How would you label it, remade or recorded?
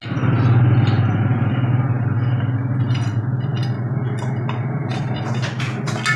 recorded